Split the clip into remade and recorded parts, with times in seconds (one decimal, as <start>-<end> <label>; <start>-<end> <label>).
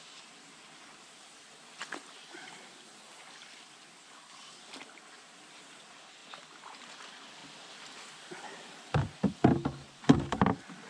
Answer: 0.0-10.9 recorded